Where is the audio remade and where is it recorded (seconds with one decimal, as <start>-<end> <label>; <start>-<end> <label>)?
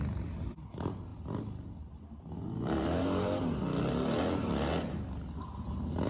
0.0-6.1 recorded